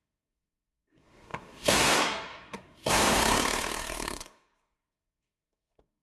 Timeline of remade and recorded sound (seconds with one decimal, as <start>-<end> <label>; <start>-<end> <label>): 0.0-6.0 remade